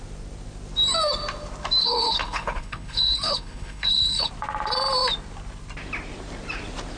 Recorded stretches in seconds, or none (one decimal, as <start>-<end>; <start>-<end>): 0.0-1.8; 4.3-7.0